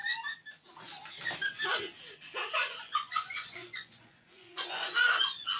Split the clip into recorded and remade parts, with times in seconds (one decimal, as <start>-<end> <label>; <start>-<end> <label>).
0.0-2.8 recorded; 2.8-5.6 remade